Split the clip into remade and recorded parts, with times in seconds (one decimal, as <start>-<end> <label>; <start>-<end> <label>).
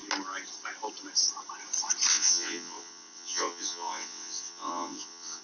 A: 0.0-2.1 recorded; 2.1-5.4 remade